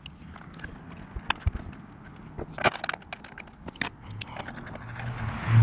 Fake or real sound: real